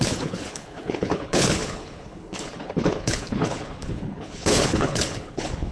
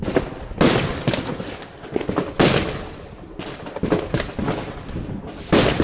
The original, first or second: second